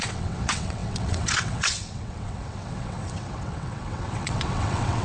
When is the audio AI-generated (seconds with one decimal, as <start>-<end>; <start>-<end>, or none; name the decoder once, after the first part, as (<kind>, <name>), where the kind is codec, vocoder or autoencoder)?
0.0-5.0 (vocoder, WaveNeXt)